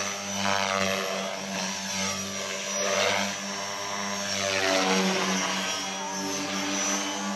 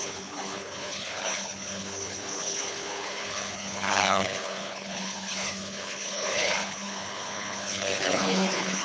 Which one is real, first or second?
first